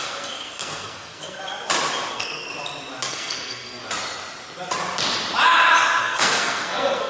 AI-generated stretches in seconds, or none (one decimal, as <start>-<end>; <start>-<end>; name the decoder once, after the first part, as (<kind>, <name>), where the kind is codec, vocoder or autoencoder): 0.0-1.4 (codec, SNAC); 2.1-2.5; 3.1-3.8; 6.0-7.1